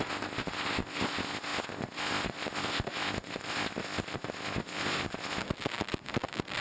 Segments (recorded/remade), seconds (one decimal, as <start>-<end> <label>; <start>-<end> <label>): 0.0-5.4 remade; 5.4-6.6 recorded